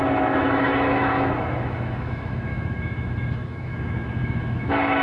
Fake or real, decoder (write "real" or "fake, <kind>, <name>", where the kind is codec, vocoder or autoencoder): fake, autoencoder, DAC-VAE